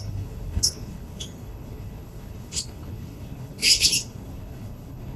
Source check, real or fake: fake